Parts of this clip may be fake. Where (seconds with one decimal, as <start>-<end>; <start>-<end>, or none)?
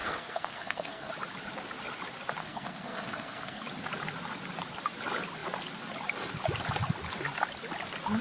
0.0-1.1; 2.4-3.6